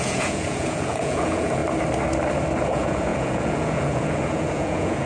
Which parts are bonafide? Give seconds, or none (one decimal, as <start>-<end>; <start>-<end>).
1.6-2.6